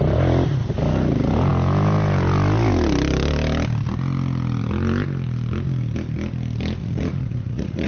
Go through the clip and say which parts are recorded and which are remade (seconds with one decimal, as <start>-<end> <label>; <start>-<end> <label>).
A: 0.0-6.8 recorded; 6.8-7.9 remade